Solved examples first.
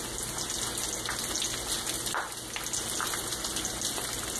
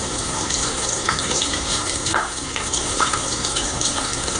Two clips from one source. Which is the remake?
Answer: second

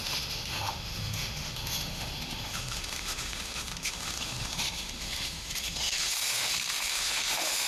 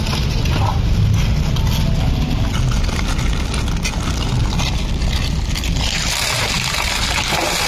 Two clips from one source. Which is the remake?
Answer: first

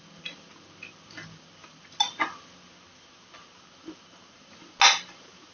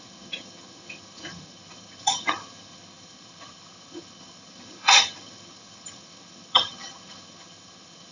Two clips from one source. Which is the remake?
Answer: second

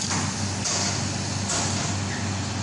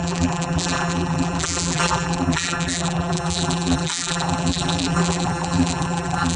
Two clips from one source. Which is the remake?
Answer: second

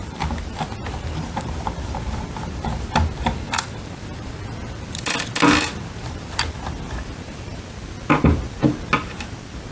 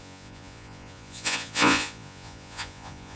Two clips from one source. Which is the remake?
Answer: second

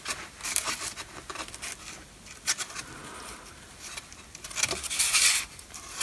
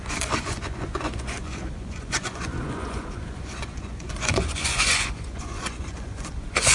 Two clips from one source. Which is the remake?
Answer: second